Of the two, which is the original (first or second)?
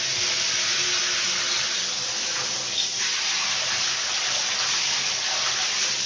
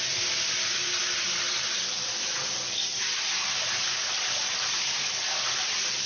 first